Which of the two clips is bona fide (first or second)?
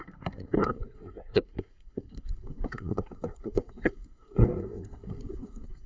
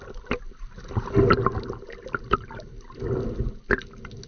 second